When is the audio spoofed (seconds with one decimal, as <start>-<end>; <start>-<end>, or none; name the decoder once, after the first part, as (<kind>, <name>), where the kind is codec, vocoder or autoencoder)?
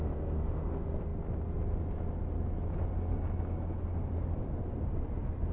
none